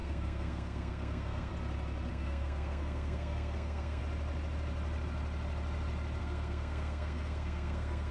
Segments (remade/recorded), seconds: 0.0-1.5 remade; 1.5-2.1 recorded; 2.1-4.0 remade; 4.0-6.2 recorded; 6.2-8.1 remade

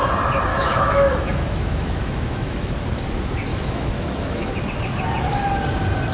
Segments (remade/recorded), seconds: 0.0-0.5 recorded; 0.5-2.7 remade; 2.7-3.5 recorded; 3.5-4.5 remade; 4.5-6.1 recorded

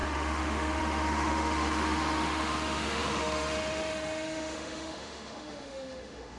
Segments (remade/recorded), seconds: 0.0-6.4 remade